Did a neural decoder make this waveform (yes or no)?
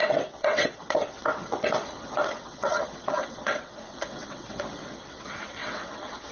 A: yes